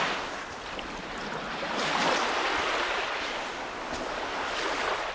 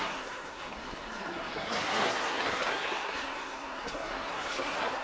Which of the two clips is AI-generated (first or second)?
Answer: second